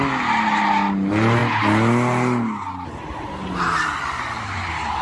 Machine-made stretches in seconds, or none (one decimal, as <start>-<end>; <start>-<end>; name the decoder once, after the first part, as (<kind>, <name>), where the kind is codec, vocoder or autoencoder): none